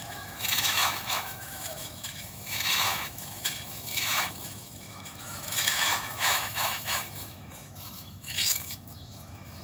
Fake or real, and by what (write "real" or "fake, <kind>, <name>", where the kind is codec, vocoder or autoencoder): fake, autoencoder, DAC-VAE